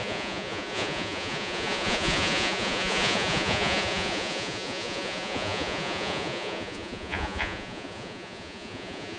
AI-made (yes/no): yes